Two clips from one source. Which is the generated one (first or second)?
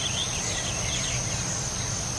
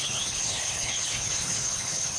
second